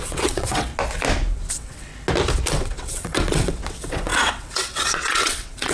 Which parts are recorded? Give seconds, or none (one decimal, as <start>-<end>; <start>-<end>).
0.7-1.5; 1.9-2.5